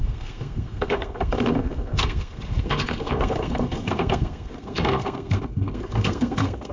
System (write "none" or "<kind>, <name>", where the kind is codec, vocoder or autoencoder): codec, SNAC